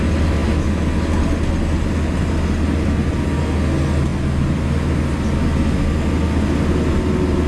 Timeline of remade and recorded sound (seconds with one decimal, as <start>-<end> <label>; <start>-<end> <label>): 0.0-7.5 recorded